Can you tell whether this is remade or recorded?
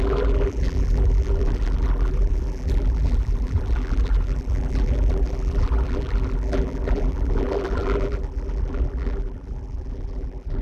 remade